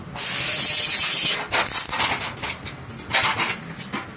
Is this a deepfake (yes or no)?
no